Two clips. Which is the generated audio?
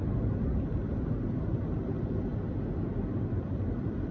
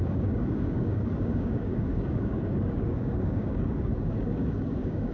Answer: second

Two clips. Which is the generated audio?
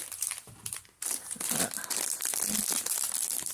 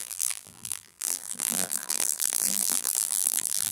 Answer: second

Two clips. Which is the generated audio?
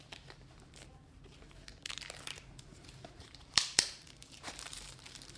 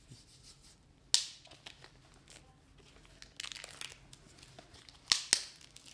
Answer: first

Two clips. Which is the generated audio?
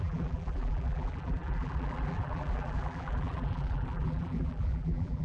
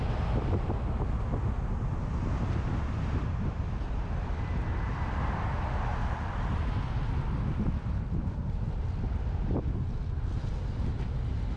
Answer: first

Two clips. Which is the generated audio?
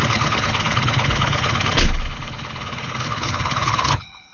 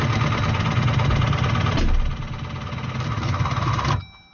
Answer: first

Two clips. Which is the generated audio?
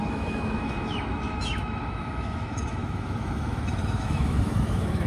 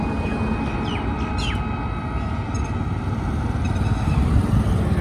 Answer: first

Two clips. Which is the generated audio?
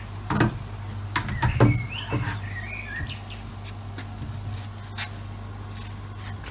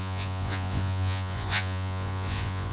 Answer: second